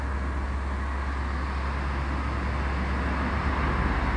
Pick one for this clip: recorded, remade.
recorded